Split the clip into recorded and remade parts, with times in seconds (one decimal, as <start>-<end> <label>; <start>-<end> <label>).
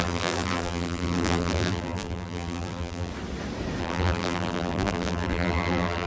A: 0.0-3.1 remade; 3.1-3.8 recorded; 3.8-6.1 remade